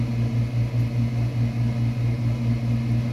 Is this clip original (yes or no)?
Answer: yes